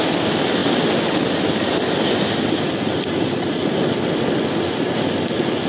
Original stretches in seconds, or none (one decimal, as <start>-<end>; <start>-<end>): 0.0-5.7